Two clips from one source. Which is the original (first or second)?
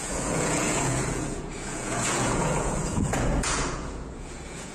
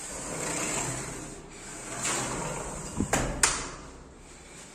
second